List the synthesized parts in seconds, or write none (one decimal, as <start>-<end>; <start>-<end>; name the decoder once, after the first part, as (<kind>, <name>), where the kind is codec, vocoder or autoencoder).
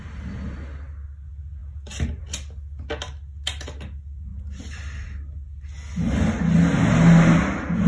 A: none